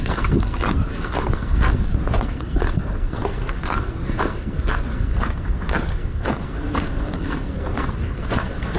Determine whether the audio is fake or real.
fake